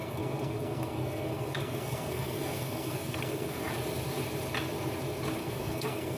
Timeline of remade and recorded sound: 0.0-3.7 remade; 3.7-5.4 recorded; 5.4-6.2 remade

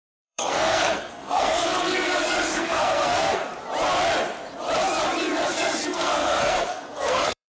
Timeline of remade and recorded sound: 0.0-3.4 remade; 3.4-5.5 recorded; 5.5-7.6 remade